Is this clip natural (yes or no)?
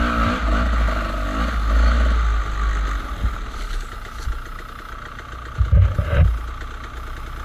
yes